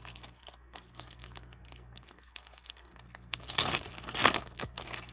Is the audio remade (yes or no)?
yes